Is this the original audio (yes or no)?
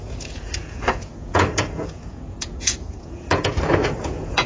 no